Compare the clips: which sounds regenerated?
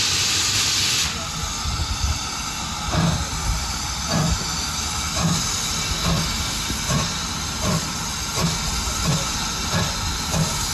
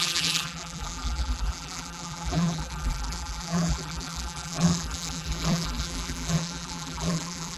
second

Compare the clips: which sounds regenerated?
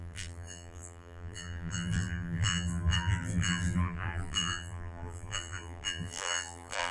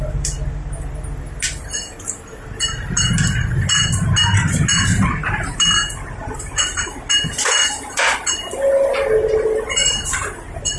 first